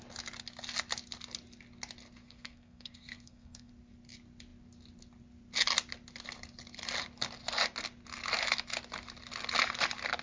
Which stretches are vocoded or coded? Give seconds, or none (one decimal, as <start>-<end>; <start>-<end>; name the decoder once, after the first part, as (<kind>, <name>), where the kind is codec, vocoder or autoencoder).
2.2-3.7 (codec, SNAC)